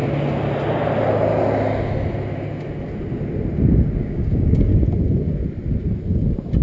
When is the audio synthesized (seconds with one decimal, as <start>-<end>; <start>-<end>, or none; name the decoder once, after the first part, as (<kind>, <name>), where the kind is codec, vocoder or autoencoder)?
4.0-4.7 (codec, DAC)